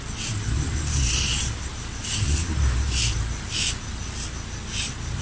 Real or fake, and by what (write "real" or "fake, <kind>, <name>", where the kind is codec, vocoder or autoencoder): real